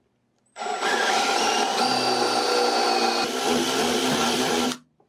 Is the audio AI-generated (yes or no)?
no